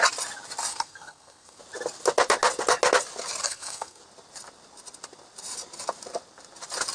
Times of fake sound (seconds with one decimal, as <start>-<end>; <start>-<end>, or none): 0.7-1.6; 3.4-4.0